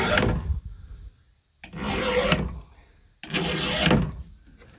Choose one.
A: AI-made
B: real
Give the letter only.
B